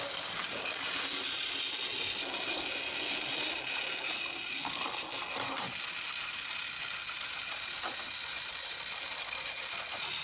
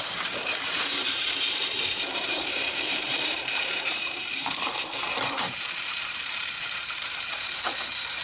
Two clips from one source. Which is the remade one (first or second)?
second